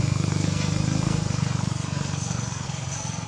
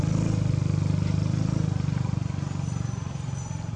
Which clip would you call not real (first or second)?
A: first